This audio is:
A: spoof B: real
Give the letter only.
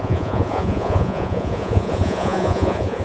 A